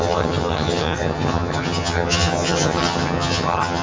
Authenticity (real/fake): fake